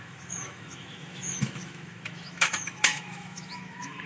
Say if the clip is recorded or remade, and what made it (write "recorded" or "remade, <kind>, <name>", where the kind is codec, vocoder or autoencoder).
remade, autoencoder, DAC-VAE